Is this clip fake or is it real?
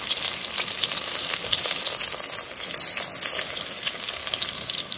real